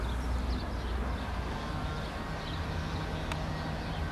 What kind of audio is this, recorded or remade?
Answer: recorded